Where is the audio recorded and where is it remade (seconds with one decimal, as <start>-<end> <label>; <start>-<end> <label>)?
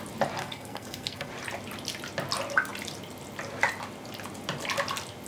0.0-0.4 recorded; 0.4-1.3 remade; 1.3-5.3 recorded